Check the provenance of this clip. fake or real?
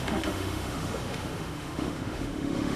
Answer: fake